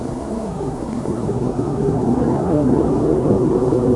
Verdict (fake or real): fake